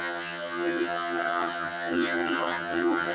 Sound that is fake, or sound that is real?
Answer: fake